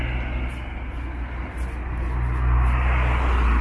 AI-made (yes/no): no